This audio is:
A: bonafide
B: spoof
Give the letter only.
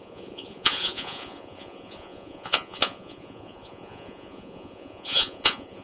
B